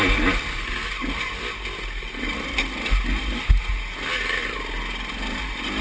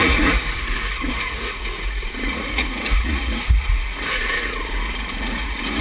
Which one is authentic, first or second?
first